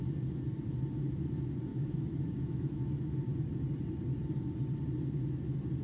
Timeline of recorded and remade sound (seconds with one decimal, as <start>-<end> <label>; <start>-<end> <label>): 0.0-1.7 recorded; 1.7-2.8 remade; 2.8-5.8 recorded